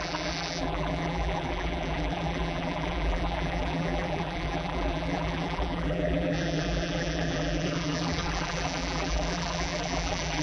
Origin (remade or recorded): remade